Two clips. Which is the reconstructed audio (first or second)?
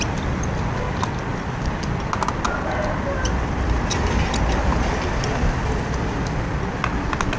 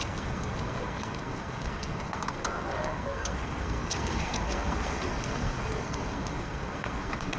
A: second